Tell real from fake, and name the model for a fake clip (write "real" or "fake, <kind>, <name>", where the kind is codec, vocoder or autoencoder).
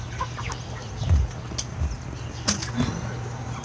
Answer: real